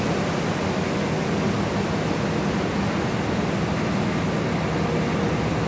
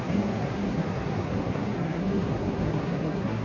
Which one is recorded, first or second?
first